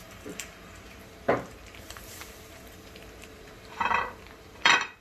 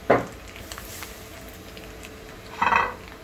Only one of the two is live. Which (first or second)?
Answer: second